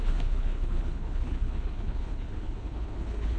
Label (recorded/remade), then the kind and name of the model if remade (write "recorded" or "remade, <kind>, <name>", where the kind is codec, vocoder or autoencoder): remade, codec, HILCodec